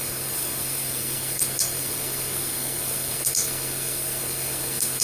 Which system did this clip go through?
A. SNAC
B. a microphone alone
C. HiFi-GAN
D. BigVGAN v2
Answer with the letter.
A